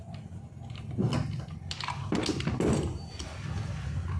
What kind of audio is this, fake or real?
real